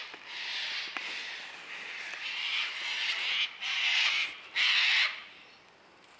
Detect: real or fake real